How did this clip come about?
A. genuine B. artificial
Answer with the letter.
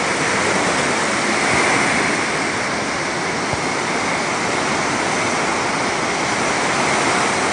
A